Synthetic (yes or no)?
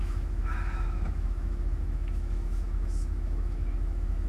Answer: yes